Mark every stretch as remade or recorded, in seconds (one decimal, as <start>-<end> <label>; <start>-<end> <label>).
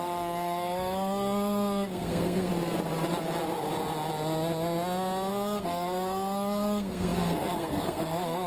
0.0-2.5 remade; 2.5-5.3 recorded; 5.3-8.5 remade